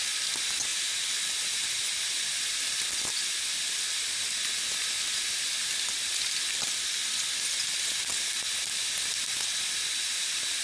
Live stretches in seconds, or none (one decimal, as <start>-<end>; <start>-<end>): 0.0-10.6